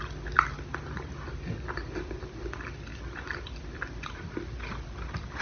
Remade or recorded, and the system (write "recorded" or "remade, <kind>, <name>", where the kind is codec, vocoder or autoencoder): recorded